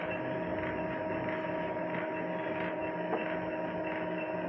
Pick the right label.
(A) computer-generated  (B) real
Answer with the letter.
B